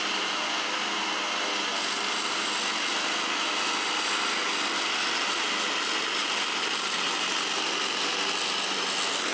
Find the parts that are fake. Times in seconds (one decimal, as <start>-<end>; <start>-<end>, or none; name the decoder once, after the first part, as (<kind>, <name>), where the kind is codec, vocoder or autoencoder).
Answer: 6.2-8.0 (vocoder, BigVGAN v2)